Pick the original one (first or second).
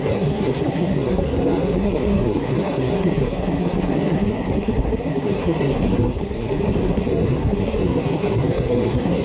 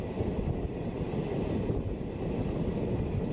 second